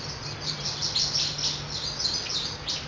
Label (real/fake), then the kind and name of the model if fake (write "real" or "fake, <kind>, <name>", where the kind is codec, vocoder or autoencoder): real